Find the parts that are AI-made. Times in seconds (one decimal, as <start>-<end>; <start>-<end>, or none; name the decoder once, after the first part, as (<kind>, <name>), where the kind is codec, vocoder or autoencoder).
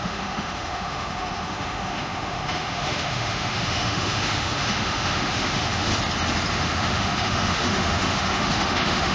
0.0-5.9 (autoencoder, DAC-VAE); 6.5-9.1